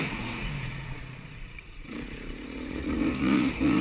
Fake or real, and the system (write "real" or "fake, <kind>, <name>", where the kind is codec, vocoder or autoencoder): fake, vocoder, Vocos